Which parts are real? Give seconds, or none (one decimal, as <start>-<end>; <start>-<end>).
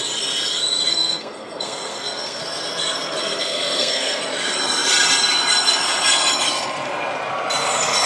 0.0-0.9; 2.4-3.2; 4.2-8.1